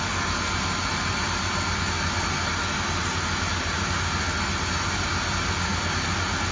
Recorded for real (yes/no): yes